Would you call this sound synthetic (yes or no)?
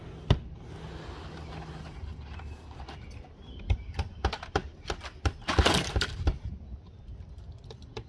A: no